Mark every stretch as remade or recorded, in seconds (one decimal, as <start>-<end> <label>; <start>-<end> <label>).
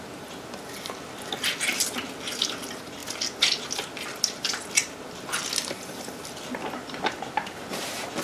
0.0-8.2 recorded